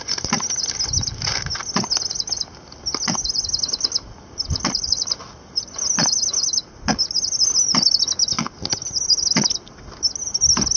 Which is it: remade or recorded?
recorded